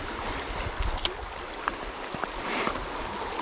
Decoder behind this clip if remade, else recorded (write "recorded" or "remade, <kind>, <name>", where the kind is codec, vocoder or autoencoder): recorded